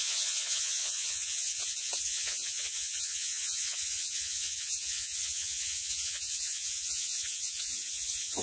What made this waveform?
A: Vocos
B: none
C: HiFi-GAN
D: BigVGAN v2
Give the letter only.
A